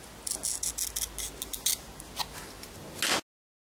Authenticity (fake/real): real